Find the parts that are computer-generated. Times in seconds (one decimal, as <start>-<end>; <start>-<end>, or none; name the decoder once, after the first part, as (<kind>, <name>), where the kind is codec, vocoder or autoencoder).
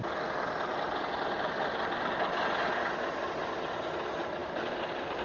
none